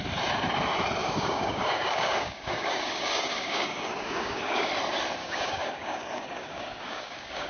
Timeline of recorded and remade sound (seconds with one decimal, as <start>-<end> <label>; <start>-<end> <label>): 0.0-1.0 recorded; 1.0-4.7 remade; 4.7-5.2 recorded; 5.2-7.5 remade